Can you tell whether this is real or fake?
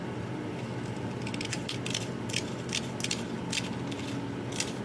real